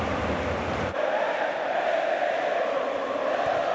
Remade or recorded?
recorded